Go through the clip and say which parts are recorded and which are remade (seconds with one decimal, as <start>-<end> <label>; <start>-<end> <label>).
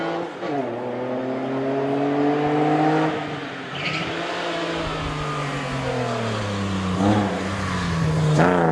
0.0-8.7 recorded